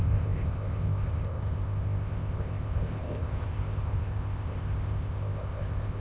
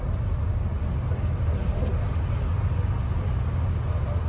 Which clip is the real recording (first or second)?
second